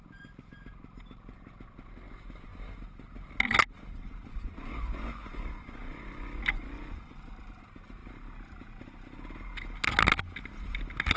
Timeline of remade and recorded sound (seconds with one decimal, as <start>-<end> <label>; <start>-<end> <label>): 0.0-4.3 recorded; 4.3-7.6 remade; 7.6-11.2 recorded